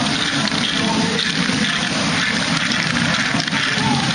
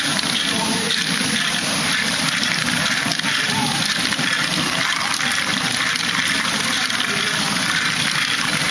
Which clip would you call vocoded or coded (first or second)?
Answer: second